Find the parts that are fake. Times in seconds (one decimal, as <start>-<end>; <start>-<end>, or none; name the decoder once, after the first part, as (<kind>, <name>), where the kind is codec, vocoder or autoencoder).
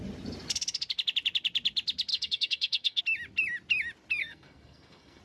2.1-3.0 (codec, SNAC); 4.2-5.2